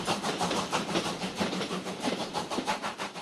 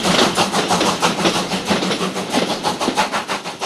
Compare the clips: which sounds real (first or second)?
second